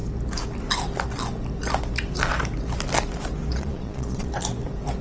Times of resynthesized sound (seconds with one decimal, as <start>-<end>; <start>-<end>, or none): 3.5-4.3